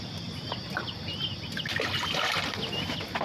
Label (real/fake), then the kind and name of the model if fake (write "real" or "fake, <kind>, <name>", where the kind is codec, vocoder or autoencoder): real